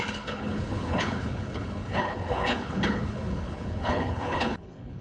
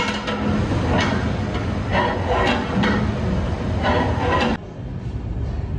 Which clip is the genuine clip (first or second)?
second